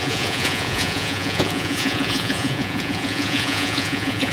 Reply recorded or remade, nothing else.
remade